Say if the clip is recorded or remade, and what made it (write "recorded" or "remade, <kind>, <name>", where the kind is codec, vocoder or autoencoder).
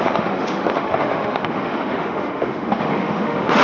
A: remade, autoencoder, DAC-VAE